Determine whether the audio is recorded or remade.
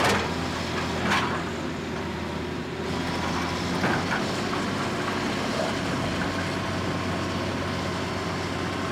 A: recorded